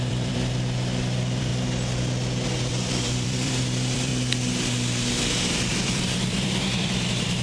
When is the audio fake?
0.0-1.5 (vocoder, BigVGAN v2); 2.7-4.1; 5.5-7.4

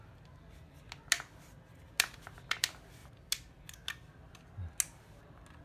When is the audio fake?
none

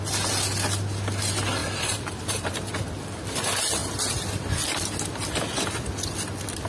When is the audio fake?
1.6-2.5 (vocoder, BigVGAN v2)